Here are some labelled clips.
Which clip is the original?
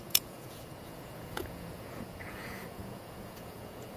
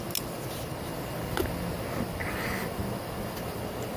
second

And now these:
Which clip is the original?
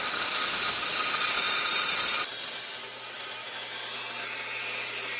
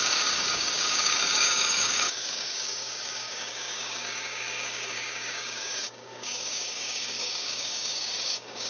first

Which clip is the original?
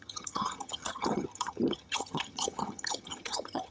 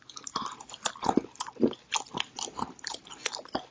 second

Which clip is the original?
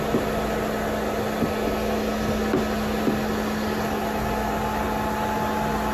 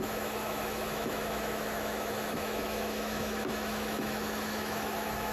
first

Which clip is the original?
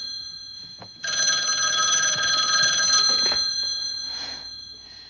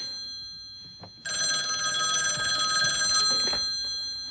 second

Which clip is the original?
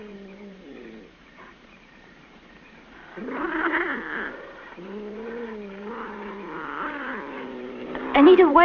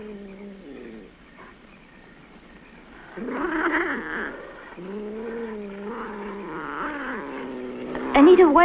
second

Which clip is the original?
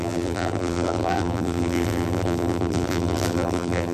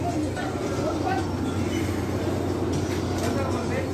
second